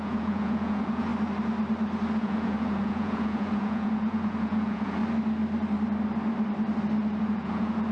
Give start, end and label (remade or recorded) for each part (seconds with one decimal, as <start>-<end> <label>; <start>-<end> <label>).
0.0-1.1 remade; 1.1-2.2 recorded; 2.2-5.0 remade; 5.0-7.2 recorded; 7.2-7.9 remade